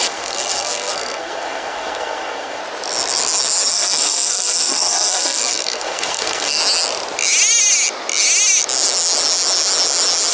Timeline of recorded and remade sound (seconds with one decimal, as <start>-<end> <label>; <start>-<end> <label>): 0.0-2.6 remade; 2.6-3.7 recorded; 3.7-6.6 remade; 6.6-10.3 recorded